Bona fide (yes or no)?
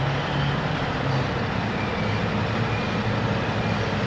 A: yes